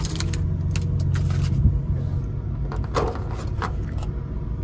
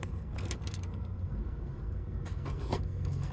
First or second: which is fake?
second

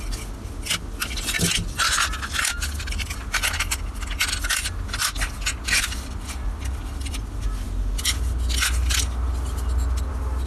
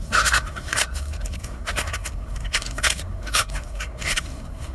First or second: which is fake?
second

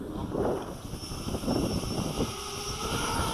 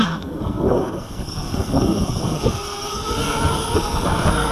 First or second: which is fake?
second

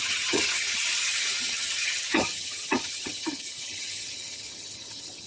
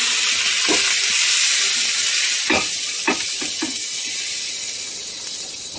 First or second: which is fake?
first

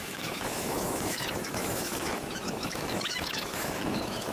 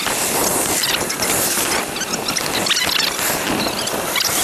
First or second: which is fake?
first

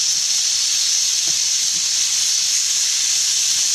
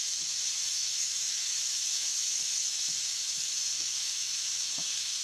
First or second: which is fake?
second